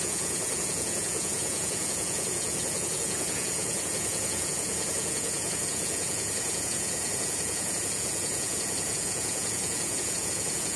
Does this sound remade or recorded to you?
remade